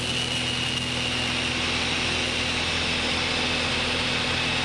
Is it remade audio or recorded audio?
recorded